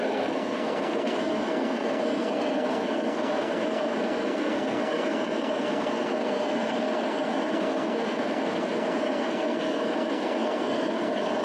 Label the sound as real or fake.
fake